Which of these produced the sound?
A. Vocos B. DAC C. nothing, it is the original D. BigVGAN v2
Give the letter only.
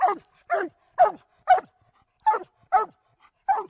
C